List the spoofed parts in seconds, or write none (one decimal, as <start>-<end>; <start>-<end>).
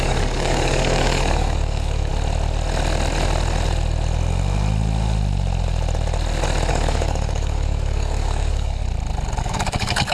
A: 0.0-2.1; 6.7-8.8; 9.4-10.1